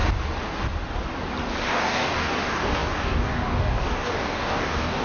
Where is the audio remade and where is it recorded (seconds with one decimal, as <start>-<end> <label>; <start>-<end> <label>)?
0.0-1.7 recorded; 1.7-5.0 remade